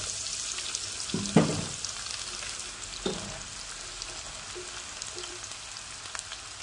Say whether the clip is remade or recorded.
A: recorded